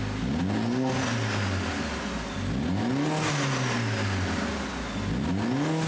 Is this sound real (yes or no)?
yes